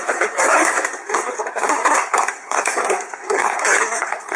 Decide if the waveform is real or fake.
fake